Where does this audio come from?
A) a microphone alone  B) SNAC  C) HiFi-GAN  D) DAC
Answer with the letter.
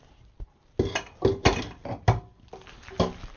A